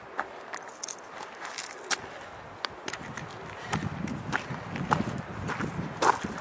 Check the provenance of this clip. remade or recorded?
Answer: recorded